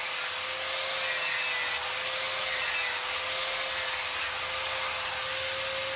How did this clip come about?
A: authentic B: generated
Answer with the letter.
A